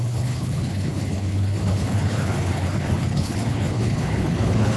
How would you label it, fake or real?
fake